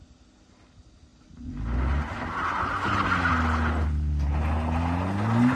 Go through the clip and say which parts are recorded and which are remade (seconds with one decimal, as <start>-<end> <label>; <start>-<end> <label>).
0.0-5.6 recorded